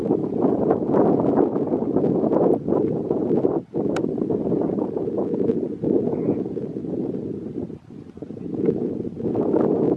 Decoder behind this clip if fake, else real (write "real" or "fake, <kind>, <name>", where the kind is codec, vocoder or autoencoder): real